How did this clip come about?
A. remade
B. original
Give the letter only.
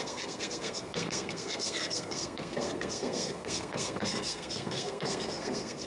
A